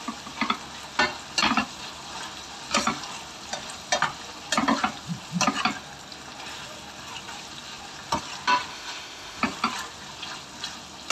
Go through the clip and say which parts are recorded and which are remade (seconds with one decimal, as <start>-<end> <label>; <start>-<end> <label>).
0.0-8.7 recorded; 8.7-9.4 remade; 9.4-11.1 recorded